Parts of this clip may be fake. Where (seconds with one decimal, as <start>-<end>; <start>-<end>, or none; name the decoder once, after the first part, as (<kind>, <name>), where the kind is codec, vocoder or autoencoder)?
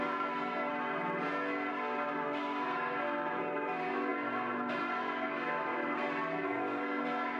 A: 0.0-0.7 (codec, SNAC); 1.7-7.4